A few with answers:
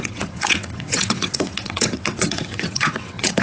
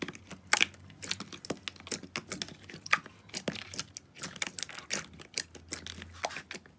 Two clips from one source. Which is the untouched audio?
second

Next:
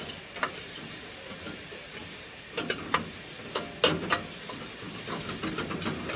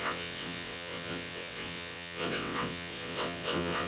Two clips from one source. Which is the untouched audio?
first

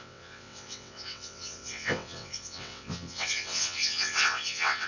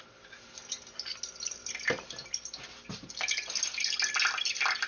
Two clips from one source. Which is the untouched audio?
second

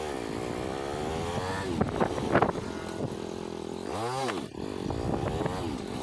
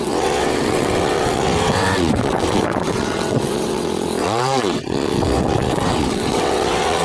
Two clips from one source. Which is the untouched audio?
first